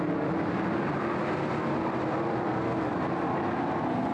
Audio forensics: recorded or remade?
recorded